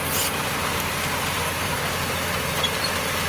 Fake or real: fake